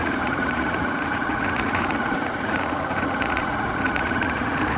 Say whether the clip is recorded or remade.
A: remade